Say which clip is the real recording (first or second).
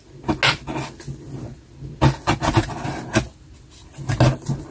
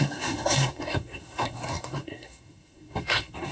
first